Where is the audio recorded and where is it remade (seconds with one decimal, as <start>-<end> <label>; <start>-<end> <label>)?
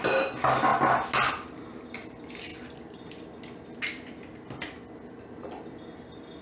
0.0-6.4 recorded